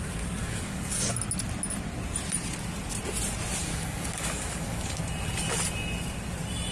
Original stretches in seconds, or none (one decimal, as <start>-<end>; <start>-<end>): 0.0-0.4; 1.1-3.6; 5.0-6.7